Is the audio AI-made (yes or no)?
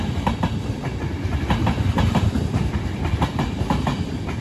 yes